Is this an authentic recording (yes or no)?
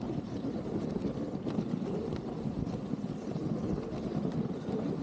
yes